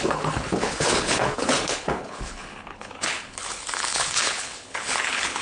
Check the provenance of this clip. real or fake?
fake